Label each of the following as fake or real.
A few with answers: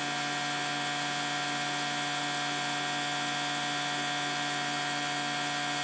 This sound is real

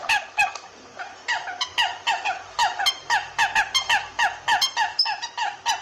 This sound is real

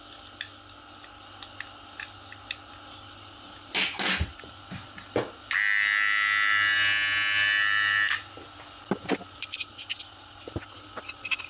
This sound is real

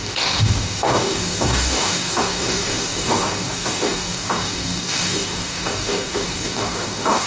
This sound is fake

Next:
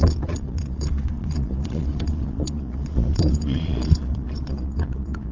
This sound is fake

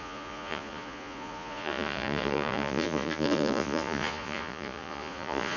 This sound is fake